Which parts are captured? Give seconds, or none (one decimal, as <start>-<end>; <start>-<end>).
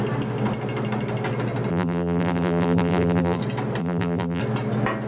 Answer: 0.0-1.7; 3.4-3.8; 4.4-5.1